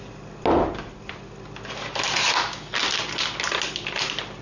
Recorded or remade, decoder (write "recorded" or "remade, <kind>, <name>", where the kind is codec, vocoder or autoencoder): recorded